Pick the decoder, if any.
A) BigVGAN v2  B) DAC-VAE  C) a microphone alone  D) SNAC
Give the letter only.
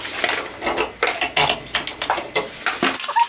C